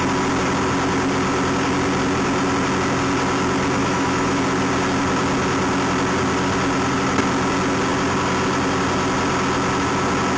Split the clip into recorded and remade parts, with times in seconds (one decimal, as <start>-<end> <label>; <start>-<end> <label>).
0.0-3.8 recorded; 3.8-4.4 remade; 4.4-10.4 recorded